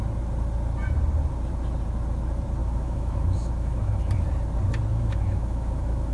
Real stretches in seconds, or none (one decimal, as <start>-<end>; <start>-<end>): 0.0-2.6; 4.0-4.9